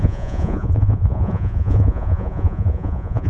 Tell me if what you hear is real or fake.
fake